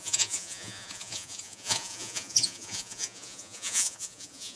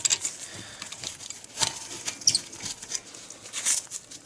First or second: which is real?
second